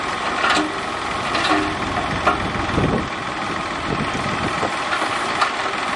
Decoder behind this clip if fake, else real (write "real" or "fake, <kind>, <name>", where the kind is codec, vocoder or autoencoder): real